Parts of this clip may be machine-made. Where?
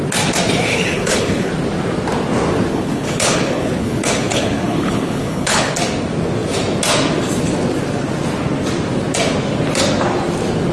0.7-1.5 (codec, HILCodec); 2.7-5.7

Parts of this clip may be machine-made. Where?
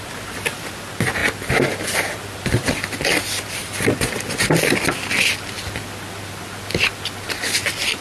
none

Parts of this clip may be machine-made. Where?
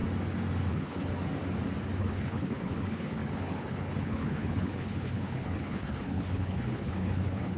0.7-1.1 (codec, HILCodec); 2.0-7.6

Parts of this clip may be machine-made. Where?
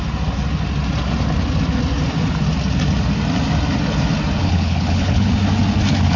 4.4-5.3 (codec, HILCodec)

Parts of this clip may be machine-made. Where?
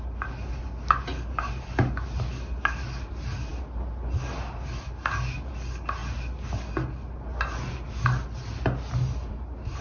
none